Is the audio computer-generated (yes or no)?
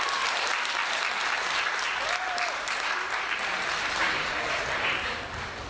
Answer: no